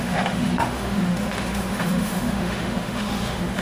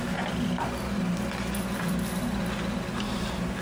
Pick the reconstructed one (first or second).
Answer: first